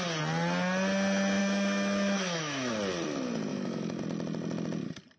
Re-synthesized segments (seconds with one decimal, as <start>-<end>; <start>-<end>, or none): 1.4-2.7; 3.5-4.0